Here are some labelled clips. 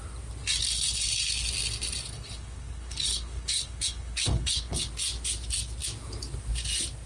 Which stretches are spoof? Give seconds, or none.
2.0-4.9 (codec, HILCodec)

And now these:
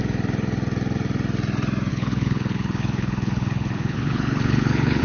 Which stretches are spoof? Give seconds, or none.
1.9-5.0 (codec, HILCodec)

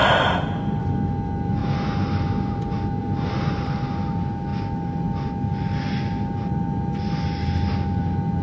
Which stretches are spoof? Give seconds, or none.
none